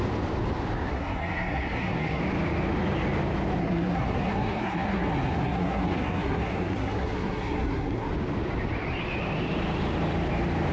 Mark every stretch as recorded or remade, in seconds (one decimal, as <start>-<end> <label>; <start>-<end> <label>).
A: 0.0-0.9 recorded; 0.9-2.2 remade; 2.2-3.6 recorded; 3.6-8.1 remade; 8.1-10.7 recorded